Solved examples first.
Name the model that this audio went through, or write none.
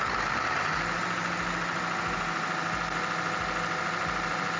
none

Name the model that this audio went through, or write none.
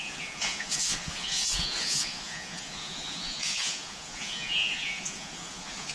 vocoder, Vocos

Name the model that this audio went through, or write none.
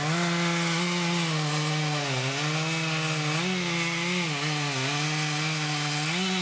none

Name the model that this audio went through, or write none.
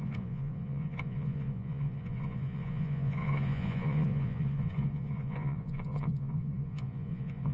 vocoder, Vocos